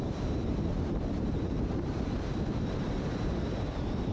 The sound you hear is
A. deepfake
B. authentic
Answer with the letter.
A